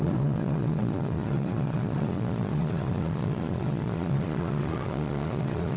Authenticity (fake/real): fake